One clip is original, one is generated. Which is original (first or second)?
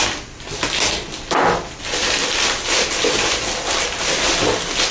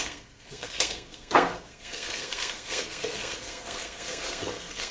first